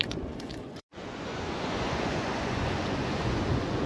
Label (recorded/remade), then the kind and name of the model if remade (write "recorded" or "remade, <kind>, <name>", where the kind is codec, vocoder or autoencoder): remade, vocoder, Vocos